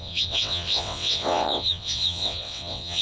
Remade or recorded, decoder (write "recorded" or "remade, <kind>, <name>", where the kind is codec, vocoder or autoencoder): remade, vocoder, WaveNeXt